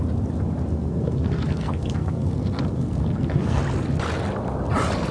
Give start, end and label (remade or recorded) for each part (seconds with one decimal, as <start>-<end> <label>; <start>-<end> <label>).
0.0-0.7 recorded; 0.7-3.6 remade; 3.6-5.1 recorded